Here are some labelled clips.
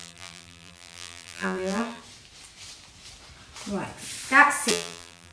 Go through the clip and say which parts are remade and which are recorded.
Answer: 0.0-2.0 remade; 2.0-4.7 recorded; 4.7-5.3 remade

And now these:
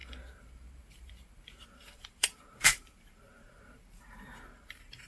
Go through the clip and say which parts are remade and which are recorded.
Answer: 0.0-5.1 remade

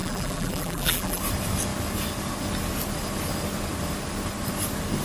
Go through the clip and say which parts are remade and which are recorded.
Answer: 0.0-1.2 remade; 1.2-5.0 recorded

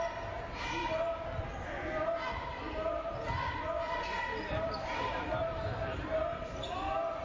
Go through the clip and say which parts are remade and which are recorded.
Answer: 0.0-4.3 recorded; 4.3-6.4 remade; 6.4-7.2 recorded

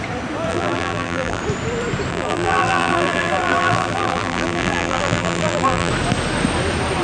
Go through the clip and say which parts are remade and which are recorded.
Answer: 0.0-0.5 recorded; 0.5-1.4 remade; 1.4-2.1 recorded; 2.1-5.9 remade; 5.9-7.0 recorded